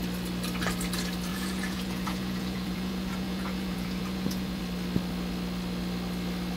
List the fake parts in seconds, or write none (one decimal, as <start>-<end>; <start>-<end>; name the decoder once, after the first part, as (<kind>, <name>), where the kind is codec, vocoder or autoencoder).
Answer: 1.3-4.6 (vocoder, Vocos)